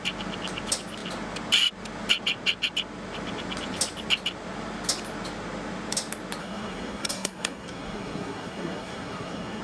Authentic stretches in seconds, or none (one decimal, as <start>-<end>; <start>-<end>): 0.0-6.4